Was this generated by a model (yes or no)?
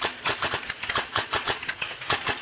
yes